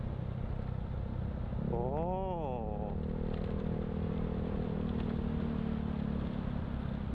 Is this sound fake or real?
real